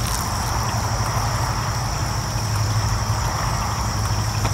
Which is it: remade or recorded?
recorded